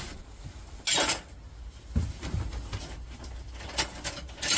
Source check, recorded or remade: recorded